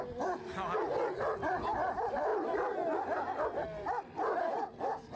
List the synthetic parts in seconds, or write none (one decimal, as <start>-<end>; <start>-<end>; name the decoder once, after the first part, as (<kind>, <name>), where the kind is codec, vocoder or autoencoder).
none